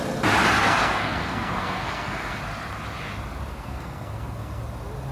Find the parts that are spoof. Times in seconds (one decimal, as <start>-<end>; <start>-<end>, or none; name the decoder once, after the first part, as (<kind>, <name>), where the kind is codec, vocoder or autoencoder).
0.6-2.4 (codec, SNAC); 3.5-4.6